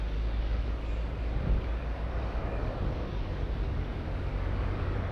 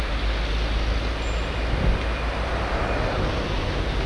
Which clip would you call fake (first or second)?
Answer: first